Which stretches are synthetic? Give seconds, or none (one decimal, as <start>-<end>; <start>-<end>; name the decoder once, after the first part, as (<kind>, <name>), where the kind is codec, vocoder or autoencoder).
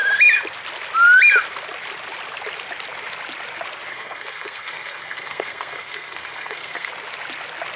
3.9-6.9 (codec, SNAC)